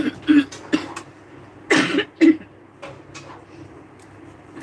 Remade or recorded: recorded